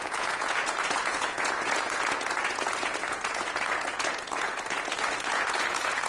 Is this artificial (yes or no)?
yes